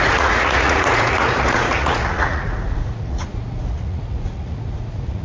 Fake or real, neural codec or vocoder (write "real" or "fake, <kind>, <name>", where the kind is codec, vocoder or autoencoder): fake, vocoder, Vocos